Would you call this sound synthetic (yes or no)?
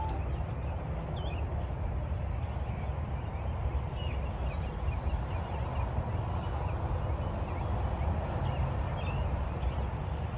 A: no